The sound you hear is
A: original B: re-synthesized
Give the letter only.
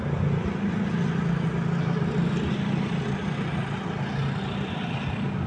A